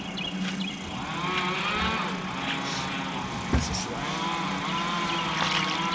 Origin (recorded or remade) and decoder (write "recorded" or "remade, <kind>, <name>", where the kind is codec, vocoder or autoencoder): recorded